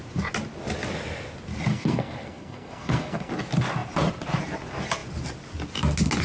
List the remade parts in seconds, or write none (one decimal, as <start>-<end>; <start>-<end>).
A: 1.7-3.3